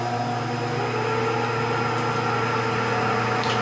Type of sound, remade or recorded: recorded